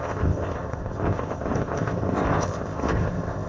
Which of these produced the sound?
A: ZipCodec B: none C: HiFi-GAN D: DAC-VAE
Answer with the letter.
A